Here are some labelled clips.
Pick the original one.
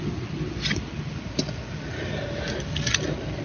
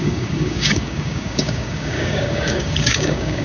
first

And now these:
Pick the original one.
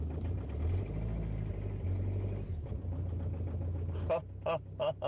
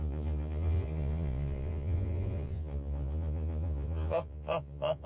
first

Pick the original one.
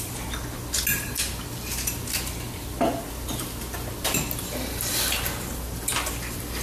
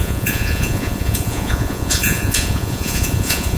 first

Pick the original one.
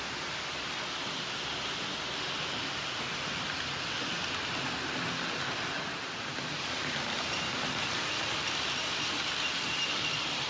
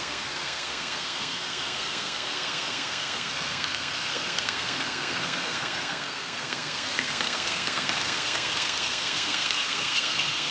first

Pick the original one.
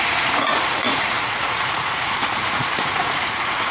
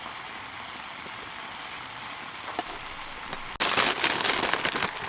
second